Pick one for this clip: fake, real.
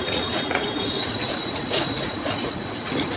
fake